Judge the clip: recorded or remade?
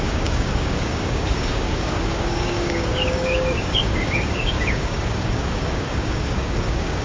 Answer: remade